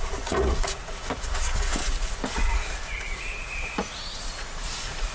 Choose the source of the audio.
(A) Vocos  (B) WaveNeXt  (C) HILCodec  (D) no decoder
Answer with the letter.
A